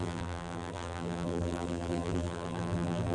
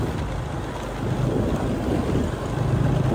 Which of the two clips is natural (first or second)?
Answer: second